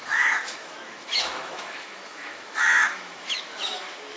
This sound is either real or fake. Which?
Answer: fake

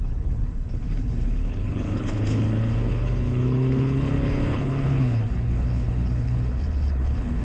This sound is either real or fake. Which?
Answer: fake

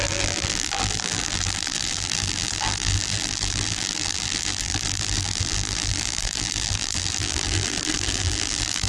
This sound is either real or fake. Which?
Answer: fake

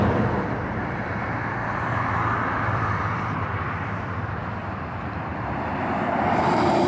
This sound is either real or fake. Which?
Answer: fake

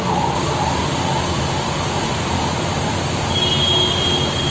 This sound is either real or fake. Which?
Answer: real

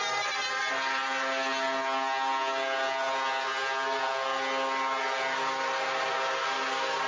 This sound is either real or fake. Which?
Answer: real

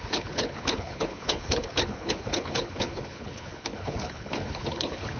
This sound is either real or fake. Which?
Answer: fake